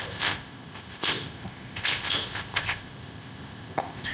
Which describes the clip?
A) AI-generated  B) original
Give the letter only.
A